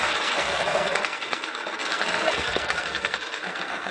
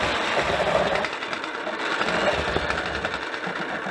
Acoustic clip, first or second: second